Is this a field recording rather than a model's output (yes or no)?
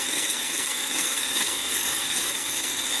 no